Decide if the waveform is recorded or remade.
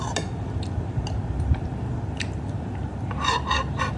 recorded